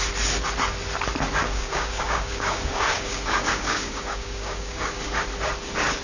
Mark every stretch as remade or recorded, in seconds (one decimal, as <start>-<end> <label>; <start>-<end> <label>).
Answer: 0.0-1.4 recorded; 1.4-5.0 remade; 5.0-6.0 recorded